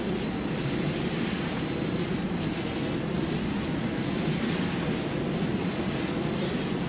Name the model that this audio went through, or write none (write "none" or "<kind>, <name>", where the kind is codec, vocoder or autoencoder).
none